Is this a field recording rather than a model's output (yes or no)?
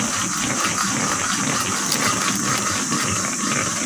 yes